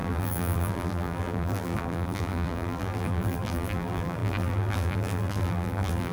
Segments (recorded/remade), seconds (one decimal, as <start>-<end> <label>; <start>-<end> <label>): 0.0-6.1 remade